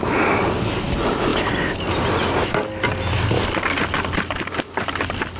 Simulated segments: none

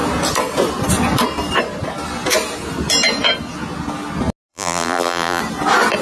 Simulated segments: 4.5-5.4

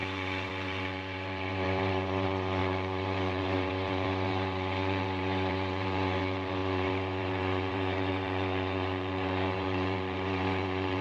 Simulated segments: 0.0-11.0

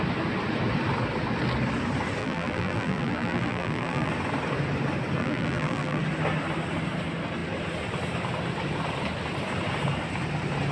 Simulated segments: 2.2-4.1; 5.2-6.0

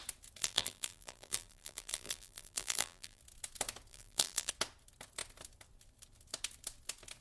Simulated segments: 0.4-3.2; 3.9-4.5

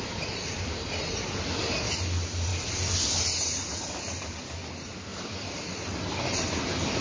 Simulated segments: 0.4-1.3; 5.1-6.0

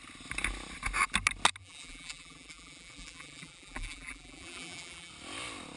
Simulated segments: 1.6-5.1